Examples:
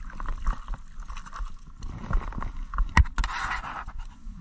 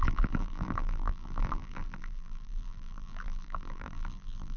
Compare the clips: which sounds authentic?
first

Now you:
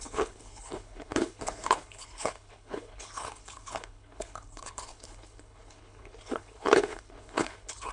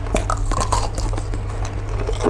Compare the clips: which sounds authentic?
second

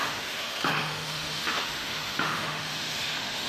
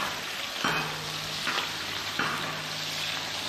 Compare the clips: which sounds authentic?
second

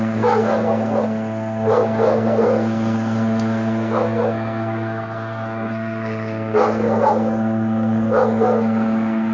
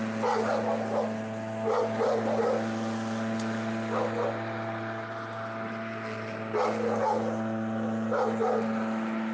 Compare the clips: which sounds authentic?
second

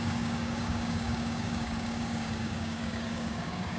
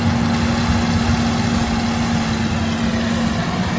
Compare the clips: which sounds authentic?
second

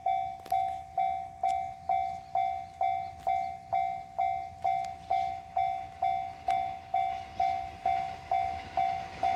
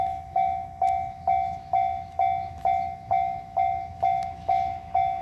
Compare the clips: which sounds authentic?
first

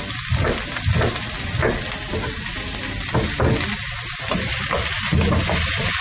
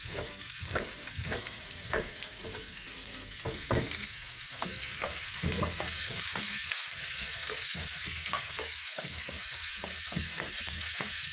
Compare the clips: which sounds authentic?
first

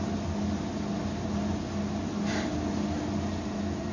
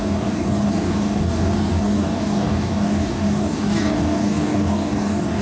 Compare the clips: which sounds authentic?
first